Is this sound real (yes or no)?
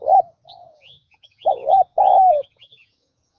no